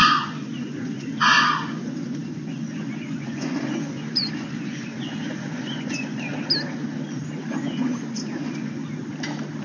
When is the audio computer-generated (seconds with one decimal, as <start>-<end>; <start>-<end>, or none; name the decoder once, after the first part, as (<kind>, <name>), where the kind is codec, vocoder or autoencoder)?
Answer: 0.0-6.3 (vocoder, Vocos); 7.5-8.8